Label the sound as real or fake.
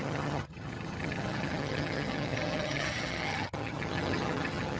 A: fake